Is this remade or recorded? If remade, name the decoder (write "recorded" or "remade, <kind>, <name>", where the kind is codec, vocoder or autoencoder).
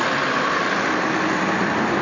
recorded